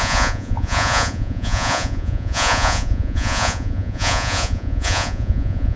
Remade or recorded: remade